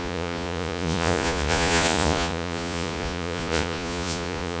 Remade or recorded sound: remade